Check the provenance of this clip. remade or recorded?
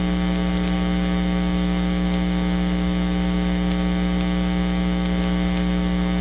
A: recorded